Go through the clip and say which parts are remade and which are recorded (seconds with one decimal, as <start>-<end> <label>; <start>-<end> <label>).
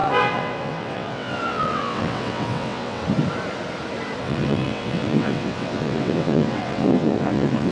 0.0-3.0 remade; 3.0-4.2 recorded; 4.2-7.7 remade